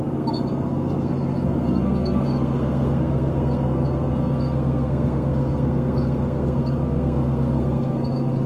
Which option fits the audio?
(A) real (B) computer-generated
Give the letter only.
B